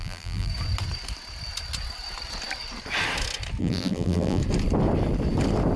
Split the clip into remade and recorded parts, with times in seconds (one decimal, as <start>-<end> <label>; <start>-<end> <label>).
0.0-0.5 remade; 0.5-3.6 recorded; 3.6-4.4 remade; 4.4-5.8 recorded